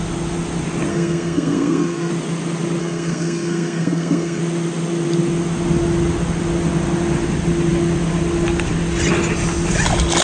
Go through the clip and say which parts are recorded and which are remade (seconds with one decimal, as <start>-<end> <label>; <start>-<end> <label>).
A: 0.0-0.9 recorded; 0.9-2.1 remade; 2.1-2.8 recorded; 2.8-4.4 remade; 4.4-10.2 recorded